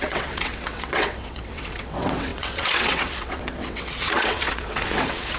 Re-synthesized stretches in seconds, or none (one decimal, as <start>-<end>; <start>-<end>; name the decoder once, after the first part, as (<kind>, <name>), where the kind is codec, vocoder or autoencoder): 0.0-5.4 (vocoder, WaveNeXt)